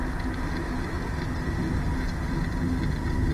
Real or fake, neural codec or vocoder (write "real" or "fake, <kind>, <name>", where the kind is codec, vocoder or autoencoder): real